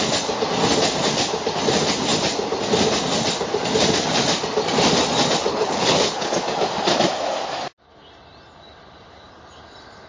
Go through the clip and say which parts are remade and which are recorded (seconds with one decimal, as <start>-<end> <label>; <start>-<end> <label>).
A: 0.0-5.5 recorded; 5.5-6.3 remade; 6.3-10.1 recorded